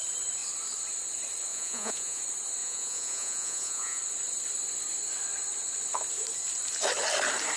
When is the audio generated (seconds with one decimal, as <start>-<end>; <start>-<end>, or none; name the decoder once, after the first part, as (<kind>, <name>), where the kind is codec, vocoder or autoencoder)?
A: 1.5-2.2 (vocoder, Vocos); 2.6-4.0